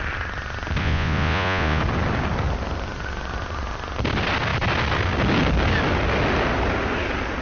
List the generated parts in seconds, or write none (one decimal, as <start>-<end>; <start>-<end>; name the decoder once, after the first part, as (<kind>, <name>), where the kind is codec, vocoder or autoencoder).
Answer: 0.8-1.8 (vocoder, Vocos)

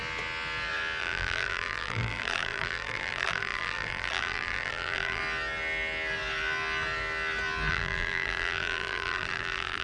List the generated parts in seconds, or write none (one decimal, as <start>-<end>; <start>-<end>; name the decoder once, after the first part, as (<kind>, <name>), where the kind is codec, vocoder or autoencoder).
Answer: 1.0-5.2 (vocoder, BigVGAN v2); 7.7-9.8

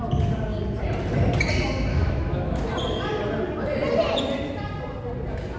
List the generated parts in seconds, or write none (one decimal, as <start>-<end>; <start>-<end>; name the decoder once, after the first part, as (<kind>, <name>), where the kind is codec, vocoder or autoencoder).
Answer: 1.9-2.6 (autoencoder, DAC-VAE)

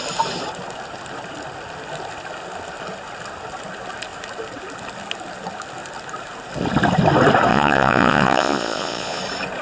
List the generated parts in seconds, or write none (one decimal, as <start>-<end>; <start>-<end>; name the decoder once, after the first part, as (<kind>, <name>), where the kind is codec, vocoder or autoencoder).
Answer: 7.5-9.2 (vocoder, Vocos)

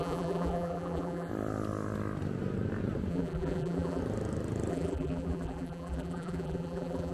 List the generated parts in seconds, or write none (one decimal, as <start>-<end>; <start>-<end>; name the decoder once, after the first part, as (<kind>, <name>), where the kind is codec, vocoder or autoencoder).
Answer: 0.0-1.3 (vocoder, BigVGAN v2); 3.1-4.0; 4.7-7.1

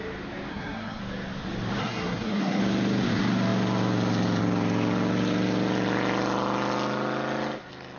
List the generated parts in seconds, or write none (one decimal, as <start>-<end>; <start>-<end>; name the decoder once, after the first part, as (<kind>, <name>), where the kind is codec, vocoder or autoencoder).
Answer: 0.5-1.0 (codec, SNAC); 1.8-2.6

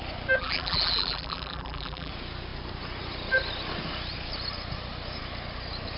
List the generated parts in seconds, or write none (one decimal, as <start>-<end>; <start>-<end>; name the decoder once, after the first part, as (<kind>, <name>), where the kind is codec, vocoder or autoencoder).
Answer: 0.4-2.1 (vocoder, BigVGAN v2)

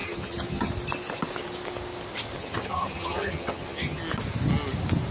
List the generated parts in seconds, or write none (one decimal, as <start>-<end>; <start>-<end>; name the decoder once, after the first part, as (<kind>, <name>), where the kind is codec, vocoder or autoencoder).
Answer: 0.0-0.7 (vocoder, HiFi-GAN); 2.4-4.0